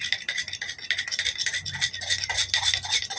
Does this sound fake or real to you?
real